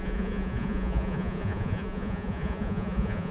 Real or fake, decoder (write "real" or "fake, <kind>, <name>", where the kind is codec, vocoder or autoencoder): fake, vocoder, Vocos